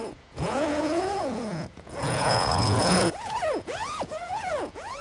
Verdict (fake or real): fake